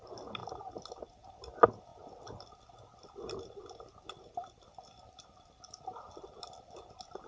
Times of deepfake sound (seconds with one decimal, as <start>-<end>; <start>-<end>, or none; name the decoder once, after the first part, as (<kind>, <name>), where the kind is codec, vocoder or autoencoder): none